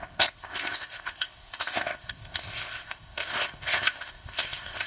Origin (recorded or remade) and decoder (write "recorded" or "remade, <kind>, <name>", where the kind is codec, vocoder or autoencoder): remade, codec, ZipCodec